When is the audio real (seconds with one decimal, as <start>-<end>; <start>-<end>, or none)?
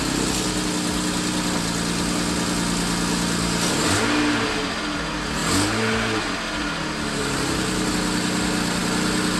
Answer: 0.0-9.4